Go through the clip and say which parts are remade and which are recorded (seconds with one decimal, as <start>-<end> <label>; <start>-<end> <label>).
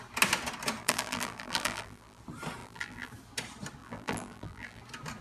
0.0-0.8 recorded; 0.8-2.2 remade; 2.2-2.6 recorded; 2.6-3.1 remade; 3.1-3.8 recorded; 3.8-4.8 remade; 4.8-5.2 recorded